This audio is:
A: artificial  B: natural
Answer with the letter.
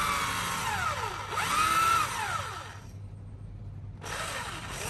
B